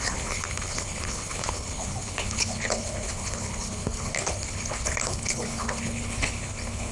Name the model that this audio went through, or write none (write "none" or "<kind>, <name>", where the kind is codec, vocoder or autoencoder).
codec, HILCodec